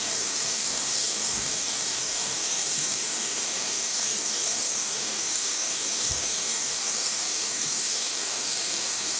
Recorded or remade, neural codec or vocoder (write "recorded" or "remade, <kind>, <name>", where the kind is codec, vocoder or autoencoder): remade, codec, DAC